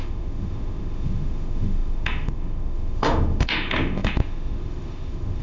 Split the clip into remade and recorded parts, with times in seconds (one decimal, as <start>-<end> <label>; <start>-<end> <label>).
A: 0.0-5.4 remade